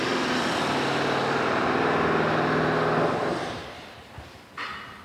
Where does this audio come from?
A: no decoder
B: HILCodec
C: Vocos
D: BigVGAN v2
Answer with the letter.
D